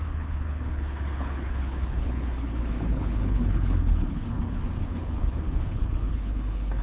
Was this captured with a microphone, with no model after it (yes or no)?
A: no